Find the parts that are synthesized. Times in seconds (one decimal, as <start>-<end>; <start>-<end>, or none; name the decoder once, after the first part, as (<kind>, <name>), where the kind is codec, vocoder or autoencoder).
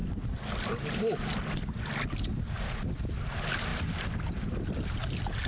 3.7-4.6 (vocoder, BigVGAN v2)